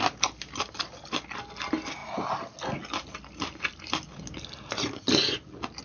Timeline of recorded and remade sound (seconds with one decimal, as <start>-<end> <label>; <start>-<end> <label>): 0.0-5.8 recorded